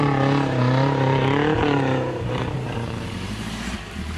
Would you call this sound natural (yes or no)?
no